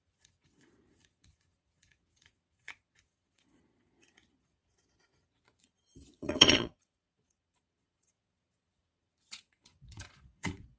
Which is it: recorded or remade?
remade